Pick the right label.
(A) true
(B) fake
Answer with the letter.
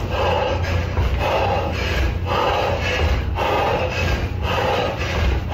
A